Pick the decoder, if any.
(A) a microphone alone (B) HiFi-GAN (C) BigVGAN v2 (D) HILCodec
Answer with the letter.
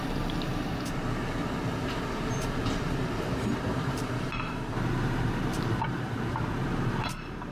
C